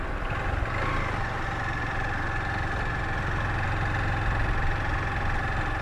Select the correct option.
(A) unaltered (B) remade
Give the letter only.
A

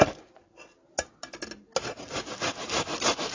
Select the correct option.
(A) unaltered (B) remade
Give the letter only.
A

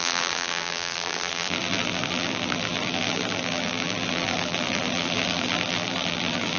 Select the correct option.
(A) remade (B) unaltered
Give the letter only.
A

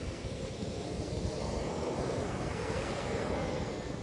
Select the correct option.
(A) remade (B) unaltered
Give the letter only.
A